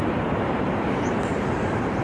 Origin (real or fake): fake